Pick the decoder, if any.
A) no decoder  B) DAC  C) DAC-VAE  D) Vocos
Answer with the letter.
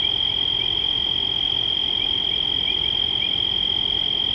A